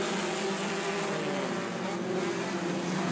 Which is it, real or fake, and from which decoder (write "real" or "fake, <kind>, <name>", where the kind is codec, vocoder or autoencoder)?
real